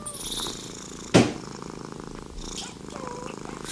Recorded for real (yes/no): yes